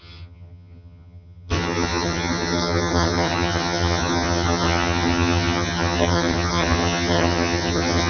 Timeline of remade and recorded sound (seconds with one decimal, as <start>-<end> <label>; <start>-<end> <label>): 0.0-8.1 remade